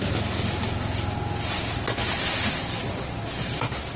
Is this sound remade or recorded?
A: recorded